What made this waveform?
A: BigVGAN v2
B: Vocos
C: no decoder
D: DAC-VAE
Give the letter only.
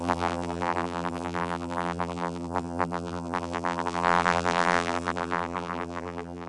A